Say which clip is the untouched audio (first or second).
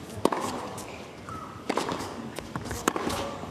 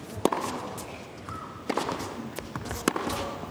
second